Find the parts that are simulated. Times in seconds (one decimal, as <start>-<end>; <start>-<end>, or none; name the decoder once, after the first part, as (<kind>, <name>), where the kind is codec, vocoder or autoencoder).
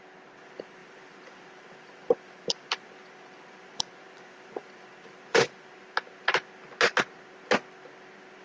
0.8-5.7 (vocoder, BigVGAN v2)